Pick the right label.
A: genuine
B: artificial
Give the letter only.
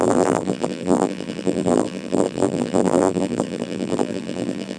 B